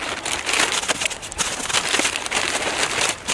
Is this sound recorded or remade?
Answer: recorded